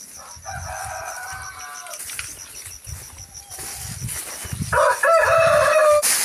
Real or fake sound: real